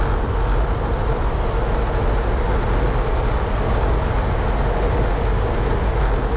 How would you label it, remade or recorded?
recorded